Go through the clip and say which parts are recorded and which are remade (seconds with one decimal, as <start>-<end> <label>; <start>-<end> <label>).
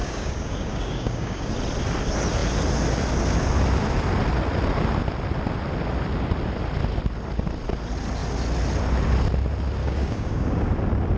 0.0-1.5 remade; 1.5-9.8 recorded; 9.8-10.7 remade; 10.7-11.2 recorded